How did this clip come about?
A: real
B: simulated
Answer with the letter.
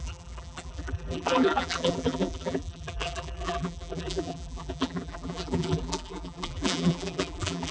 B